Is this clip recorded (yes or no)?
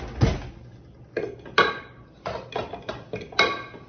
yes